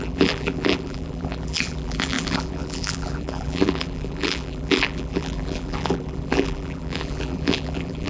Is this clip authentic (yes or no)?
no